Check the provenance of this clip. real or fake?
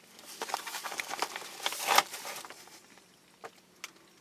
real